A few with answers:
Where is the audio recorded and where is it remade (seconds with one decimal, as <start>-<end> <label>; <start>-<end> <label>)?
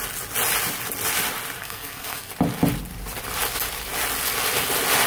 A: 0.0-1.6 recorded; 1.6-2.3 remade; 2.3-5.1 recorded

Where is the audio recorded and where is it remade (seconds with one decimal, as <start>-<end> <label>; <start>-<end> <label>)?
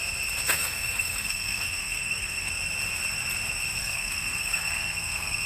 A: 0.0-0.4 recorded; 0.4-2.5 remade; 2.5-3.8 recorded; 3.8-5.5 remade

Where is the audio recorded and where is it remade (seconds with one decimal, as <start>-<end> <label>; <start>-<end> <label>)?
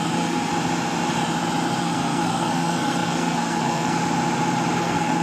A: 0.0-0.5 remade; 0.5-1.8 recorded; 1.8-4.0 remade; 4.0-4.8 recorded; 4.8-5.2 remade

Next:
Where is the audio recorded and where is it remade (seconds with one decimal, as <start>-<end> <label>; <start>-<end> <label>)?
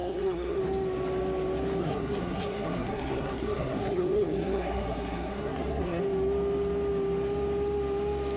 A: 0.0-0.6 remade; 0.6-1.8 recorded; 1.8-6.0 remade; 6.0-8.4 recorded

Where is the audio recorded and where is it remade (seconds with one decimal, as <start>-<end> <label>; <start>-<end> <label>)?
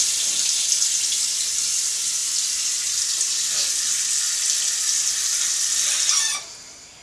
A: 0.0-7.0 recorded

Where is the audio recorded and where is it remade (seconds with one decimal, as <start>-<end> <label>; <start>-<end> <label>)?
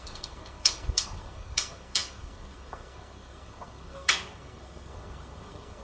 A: 0.0-5.8 remade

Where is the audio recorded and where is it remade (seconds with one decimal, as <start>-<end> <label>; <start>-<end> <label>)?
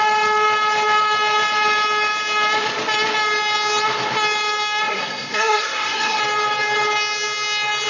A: 0.0-4.9 recorded; 4.9-6.2 remade; 6.2-7.9 recorded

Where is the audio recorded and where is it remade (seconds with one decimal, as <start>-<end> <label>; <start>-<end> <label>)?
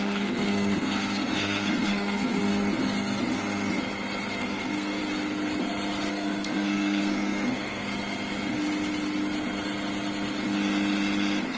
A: 0.0-2.4 remade; 2.4-4.4 recorded; 4.4-5.0 remade; 5.0-6.1 recorded; 6.1-7.9 remade; 7.9-11.6 recorded